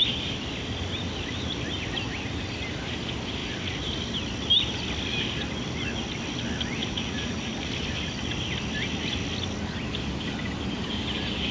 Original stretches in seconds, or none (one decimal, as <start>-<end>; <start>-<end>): 0.0-6.8; 7.7-11.5